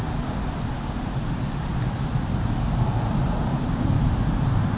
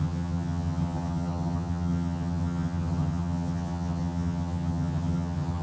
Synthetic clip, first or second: second